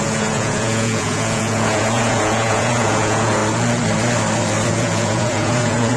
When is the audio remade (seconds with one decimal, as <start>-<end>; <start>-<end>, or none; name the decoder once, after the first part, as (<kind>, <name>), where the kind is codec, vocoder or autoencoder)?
0.0-3.4 (vocoder, Vocos); 4.7-6.0